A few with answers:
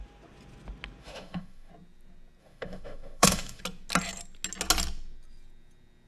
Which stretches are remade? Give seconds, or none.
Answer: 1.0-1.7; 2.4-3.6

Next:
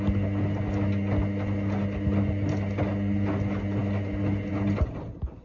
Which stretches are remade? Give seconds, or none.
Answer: none